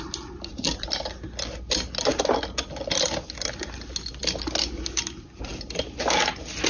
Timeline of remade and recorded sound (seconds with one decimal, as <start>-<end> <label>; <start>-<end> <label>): 0.0-6.7 recorded